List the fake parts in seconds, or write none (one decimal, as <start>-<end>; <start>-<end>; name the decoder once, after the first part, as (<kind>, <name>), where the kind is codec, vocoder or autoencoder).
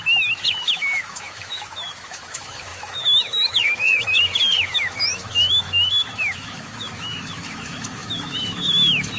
0.0-9.2 (autoencoder, DAC-VAE)